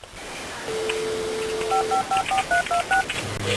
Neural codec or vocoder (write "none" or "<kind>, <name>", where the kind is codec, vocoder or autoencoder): none